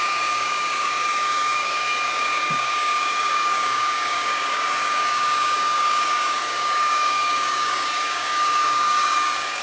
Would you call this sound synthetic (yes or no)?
yes